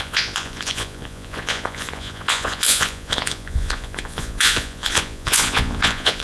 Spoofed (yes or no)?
yes